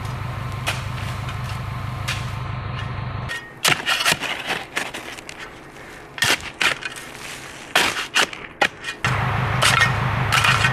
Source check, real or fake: real